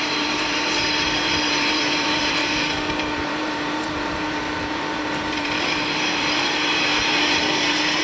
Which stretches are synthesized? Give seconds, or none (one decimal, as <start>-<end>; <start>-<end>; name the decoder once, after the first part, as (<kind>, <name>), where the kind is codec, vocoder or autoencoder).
0.0-8.0 (vocoder, BigVGAN v2)